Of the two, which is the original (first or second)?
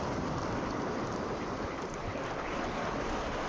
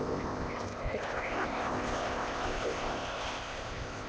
first